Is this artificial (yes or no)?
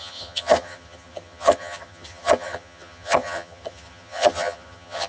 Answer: yes